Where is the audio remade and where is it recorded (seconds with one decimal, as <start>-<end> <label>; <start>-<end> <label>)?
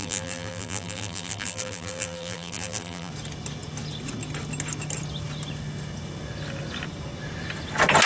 0.0-3.1 remade; 3.1-8.1 recorded